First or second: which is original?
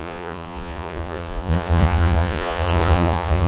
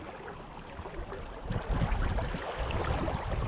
second